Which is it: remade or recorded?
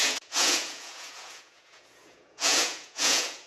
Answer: remade